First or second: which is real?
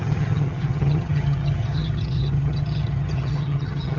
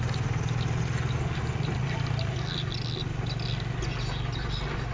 second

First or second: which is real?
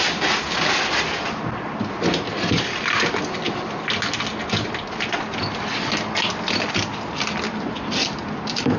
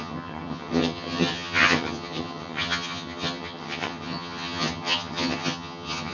first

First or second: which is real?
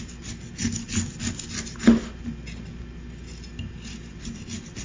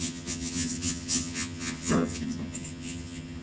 first